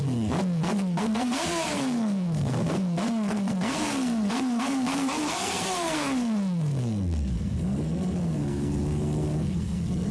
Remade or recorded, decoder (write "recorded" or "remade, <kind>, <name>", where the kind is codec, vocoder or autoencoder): remade, codec, SNAC